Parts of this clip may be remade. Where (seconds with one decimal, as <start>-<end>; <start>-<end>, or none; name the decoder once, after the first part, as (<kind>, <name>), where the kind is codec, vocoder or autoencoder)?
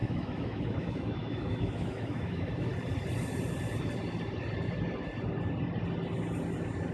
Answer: 0.0-2.7 (autoencoder, DAC-VAE)